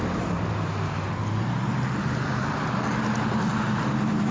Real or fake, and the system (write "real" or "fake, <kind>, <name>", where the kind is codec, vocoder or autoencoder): real